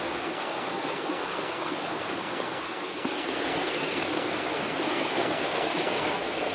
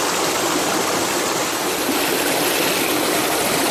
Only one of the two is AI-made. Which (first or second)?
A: first